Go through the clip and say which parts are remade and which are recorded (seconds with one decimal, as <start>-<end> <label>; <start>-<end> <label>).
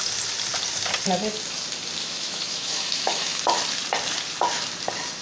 0.0-2.0 recorded; 2.0-3.4 remade; 3.4-5.2 recorded